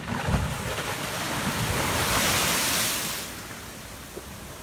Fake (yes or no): no